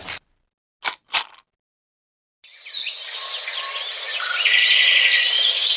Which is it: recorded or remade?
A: recorded